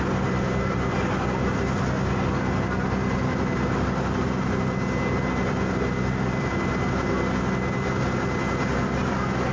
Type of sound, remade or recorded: recorded